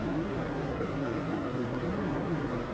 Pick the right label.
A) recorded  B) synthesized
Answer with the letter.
B